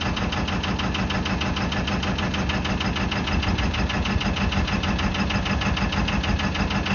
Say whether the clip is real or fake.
real